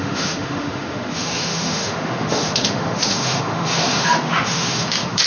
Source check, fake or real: fake